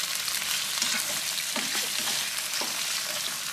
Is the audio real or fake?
fake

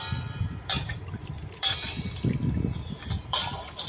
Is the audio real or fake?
fake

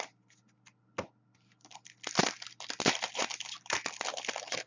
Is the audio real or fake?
real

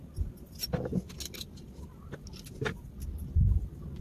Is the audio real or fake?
real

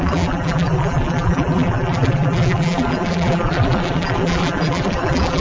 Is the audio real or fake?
fake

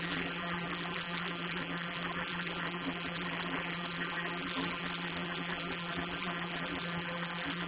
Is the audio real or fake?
fake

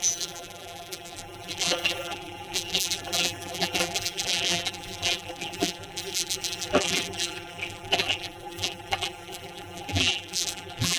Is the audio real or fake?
fake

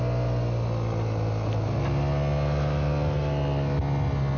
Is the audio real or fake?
real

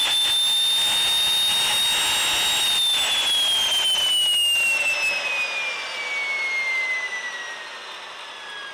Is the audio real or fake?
real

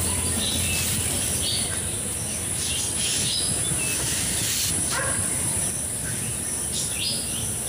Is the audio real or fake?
real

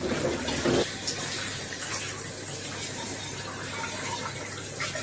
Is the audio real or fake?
real